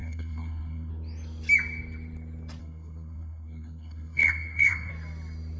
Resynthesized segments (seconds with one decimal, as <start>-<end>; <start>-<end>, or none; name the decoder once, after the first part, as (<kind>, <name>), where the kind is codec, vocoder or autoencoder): 0.0-0.9 (codec, SNAC); 2.6-4.9

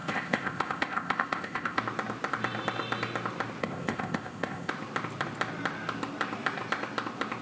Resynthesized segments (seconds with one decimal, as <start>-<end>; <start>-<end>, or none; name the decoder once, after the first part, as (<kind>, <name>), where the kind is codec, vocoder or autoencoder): 0.0-1.8 (codec, ZipCodec); 3.6-4.7

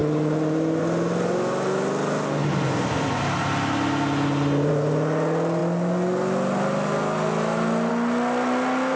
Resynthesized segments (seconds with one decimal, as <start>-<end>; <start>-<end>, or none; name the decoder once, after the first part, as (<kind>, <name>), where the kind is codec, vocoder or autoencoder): none

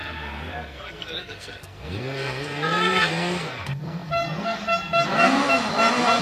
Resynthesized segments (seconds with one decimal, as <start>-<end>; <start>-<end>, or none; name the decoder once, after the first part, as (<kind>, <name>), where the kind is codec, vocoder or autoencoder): 0.0-5.4 (codec, SNAC)

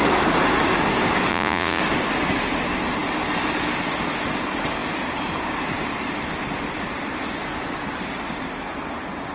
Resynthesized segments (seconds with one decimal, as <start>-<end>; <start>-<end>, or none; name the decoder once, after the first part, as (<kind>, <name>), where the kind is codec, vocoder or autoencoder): 1.3-1.8 (vocoder, Vocos)

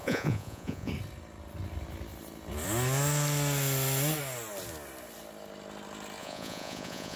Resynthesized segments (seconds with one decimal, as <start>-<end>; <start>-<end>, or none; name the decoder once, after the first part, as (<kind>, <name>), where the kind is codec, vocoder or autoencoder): 0.0-0.9 (vocoder, Vocos); 6.2-7.2

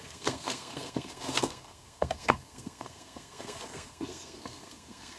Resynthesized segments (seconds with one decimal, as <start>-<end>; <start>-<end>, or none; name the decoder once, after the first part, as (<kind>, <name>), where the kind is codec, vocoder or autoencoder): 0.0-5.2 (codec, SNAC)

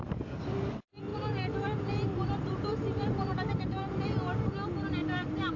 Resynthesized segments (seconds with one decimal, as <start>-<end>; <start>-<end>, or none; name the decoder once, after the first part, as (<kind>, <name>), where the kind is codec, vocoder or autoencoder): 1.1-4.5 (vocoder, BigVGAN v2); 5.0-5.6